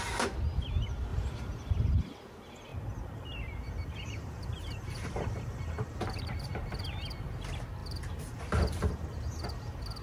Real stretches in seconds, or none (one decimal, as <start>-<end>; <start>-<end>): 0.0-1.1; 1.7-2.7; 6.7-7.8; 8.9-10.0

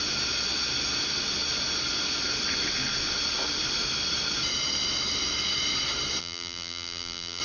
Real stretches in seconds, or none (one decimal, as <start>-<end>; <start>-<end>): 0.0-6.2

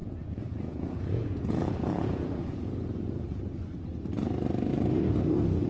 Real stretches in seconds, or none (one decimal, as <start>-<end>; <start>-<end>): 3.4-5.7

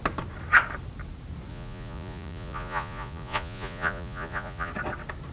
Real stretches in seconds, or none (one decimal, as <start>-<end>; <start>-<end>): 0.0-1.5; 4.7-5.3